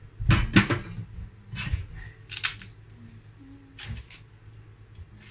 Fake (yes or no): no